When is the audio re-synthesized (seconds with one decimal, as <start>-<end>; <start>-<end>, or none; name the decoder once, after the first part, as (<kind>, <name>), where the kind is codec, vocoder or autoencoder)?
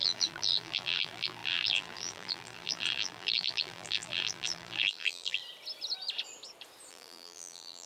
0.0-5.4 (vocoder, BigVGAN v2); 6.9-7.9